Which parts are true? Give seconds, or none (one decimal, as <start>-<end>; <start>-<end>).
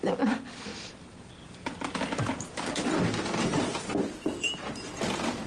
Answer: 0.0-0.7; 1.3-5.5